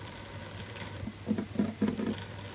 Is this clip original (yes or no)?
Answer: no